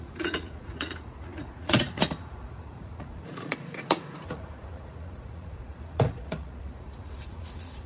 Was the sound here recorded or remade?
remade